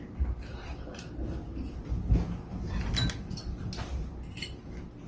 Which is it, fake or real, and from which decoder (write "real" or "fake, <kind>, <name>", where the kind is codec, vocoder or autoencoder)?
real